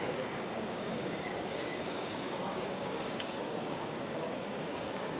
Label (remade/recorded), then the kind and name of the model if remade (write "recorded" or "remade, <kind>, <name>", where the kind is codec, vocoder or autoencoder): remade, codec, DAC